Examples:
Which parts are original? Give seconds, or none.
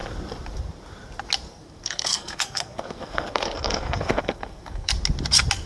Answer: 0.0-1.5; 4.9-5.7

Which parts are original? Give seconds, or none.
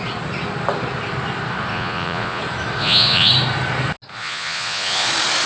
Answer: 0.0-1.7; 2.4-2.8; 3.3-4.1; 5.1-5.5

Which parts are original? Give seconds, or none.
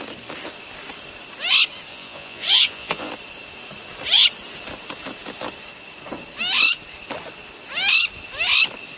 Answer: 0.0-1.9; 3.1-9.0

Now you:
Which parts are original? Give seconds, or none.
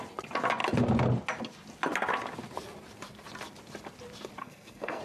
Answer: 0.0-4.4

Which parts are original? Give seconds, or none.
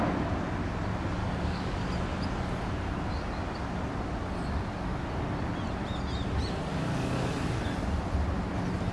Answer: 0.0-1.2; 1.8-6.7; 7.3-8.9